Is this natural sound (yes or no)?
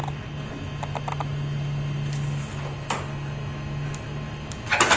yes